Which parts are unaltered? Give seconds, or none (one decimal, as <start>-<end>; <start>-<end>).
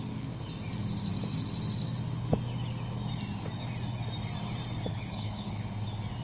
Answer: 0.0-4.9; 5.7-6.2